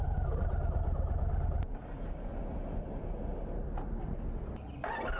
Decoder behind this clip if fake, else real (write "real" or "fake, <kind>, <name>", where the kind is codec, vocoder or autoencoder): real